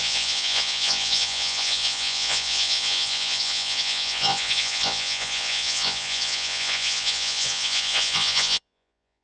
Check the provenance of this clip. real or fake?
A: fake